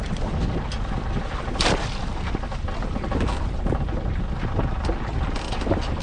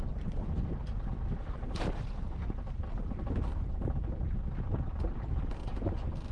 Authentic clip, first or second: first